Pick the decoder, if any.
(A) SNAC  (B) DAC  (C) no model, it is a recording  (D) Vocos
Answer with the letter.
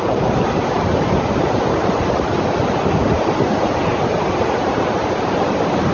C